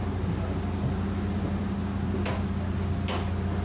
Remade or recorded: recorded